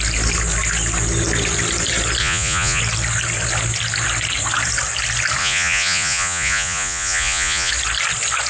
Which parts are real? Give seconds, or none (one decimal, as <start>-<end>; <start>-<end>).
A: 0.0-2.2; 2.8-5.4; 7.7-8.5